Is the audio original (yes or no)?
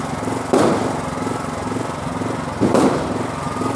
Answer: yes